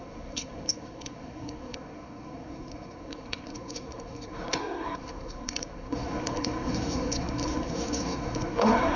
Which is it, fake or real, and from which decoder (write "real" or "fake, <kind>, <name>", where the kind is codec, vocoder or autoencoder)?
fake, codec, SNAC